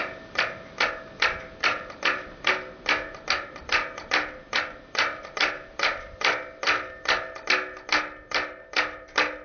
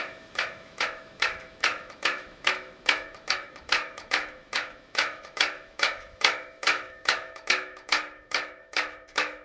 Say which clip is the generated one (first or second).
second